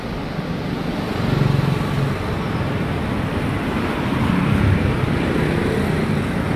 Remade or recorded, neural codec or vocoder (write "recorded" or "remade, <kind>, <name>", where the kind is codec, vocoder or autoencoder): recorded